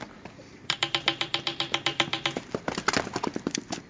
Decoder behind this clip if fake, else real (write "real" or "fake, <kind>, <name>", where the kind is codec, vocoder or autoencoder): fake, vocoder, BigVGAN v2